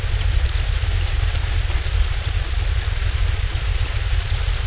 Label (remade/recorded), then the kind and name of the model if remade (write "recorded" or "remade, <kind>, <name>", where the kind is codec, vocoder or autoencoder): remade, vocoder, BigVGAN v2